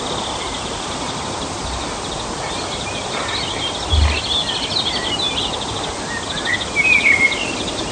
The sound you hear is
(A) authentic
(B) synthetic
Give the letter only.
A